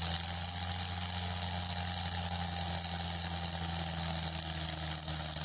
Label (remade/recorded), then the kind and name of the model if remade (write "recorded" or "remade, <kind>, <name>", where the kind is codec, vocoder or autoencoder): recorded